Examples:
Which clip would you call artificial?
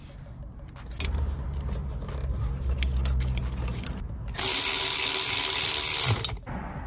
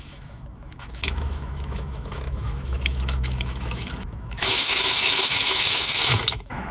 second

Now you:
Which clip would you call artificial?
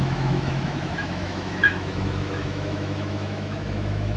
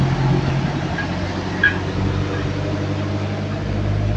first